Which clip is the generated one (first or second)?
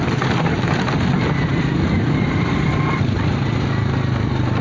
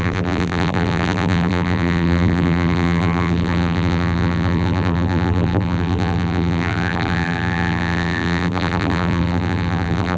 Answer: second